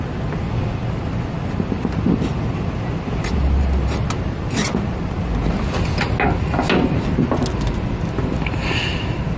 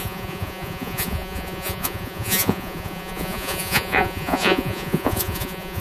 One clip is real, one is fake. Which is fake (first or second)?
second